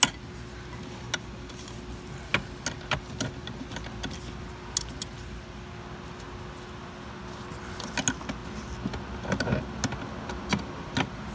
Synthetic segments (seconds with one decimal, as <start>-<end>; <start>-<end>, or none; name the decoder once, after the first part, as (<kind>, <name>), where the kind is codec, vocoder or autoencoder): none